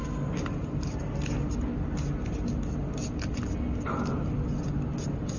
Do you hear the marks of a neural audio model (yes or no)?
no